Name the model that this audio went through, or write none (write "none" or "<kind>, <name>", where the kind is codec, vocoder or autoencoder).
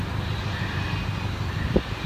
none